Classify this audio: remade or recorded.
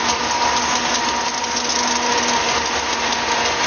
recorded